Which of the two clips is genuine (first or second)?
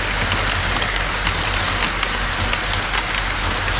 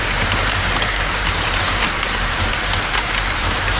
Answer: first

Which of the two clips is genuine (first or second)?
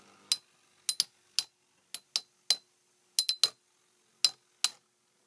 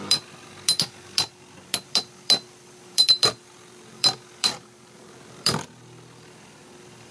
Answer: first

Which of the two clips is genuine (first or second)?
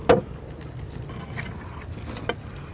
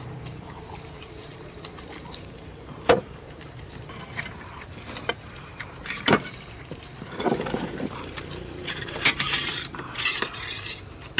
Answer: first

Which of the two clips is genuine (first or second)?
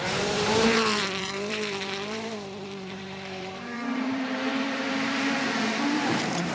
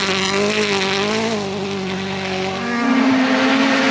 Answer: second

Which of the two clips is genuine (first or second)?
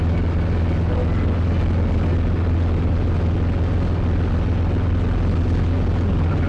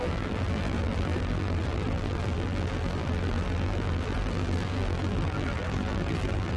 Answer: first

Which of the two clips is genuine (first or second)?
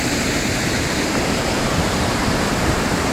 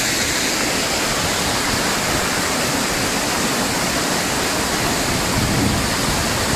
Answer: second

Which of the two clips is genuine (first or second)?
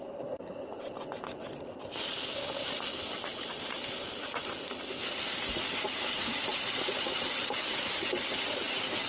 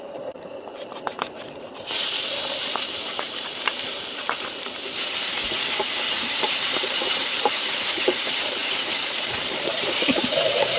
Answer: first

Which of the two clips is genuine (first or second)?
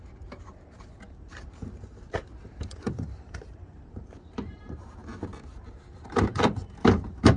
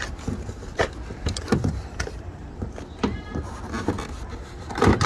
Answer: second